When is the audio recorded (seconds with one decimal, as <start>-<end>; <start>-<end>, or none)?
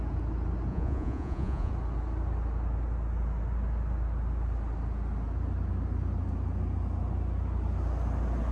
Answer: 0.0-0.7; 1.7-8.5